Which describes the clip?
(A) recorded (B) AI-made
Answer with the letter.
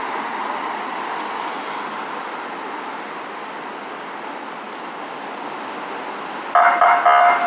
A